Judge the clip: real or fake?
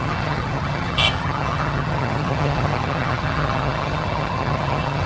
fake